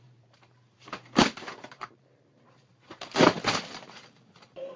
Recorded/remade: remade